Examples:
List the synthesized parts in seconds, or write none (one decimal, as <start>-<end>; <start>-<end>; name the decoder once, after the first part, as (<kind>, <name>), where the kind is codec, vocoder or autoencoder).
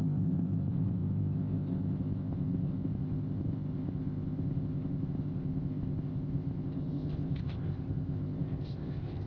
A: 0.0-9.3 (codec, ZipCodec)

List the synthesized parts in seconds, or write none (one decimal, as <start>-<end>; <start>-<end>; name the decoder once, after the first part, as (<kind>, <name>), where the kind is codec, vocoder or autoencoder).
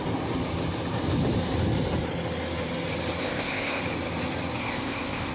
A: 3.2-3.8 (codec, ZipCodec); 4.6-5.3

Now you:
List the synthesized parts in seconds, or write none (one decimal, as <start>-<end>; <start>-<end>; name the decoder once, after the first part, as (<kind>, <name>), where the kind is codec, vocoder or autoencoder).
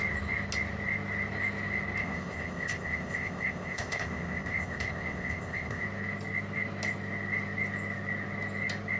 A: 2.0-5.8 (codec, ZipCodec)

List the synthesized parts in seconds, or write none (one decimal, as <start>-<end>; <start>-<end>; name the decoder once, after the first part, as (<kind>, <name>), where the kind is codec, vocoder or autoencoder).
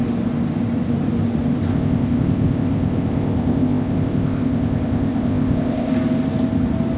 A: 1.7-5.9 (codec, ZipCodec)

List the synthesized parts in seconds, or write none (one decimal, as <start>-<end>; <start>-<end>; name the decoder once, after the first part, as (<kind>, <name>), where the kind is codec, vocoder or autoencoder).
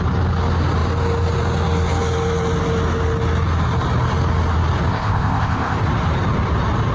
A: 4.9-5.8 (codec, ZipCodec)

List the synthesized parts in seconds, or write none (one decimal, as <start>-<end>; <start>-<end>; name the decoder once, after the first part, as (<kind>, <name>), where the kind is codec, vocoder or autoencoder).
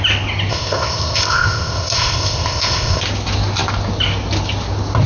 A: 0.5-3.0 (codec, ZipCodec)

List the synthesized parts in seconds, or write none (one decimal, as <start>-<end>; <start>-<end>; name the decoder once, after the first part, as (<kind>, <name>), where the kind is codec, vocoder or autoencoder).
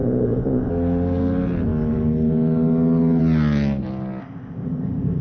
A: 0.0-0.7 (codec, ZipCodec); 4.2-5.2